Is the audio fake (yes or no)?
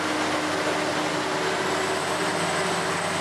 no